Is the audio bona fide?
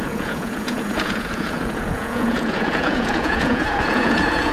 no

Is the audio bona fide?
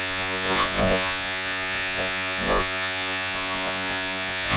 no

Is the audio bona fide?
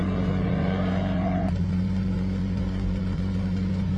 no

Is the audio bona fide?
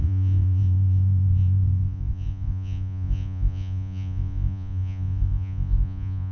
no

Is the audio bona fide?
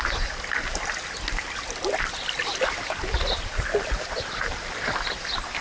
yes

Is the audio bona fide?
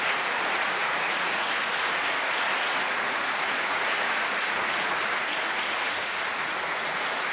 no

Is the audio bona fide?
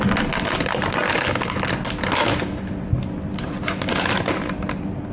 yes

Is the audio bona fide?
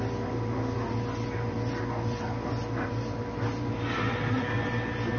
yes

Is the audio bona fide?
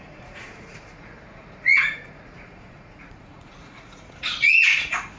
no